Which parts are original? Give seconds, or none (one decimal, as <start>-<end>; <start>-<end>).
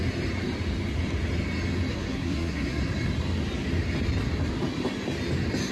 0.0-1.9; 2.8-5.7